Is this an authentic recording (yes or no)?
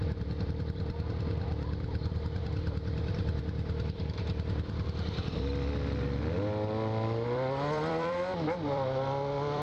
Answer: no